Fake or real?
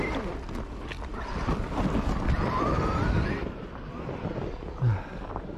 real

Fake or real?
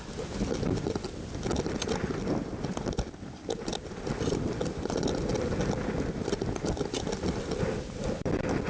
real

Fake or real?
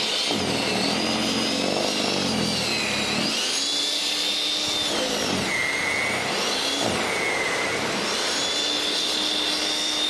real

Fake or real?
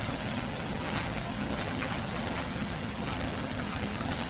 fake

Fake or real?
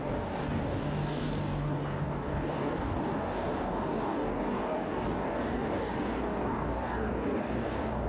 fake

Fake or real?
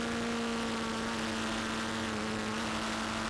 real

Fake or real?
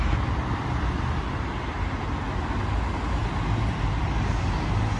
real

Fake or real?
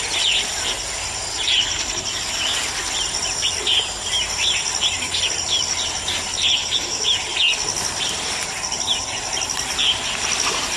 real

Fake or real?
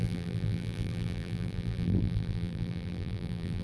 fake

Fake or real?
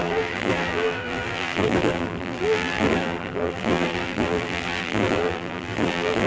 fake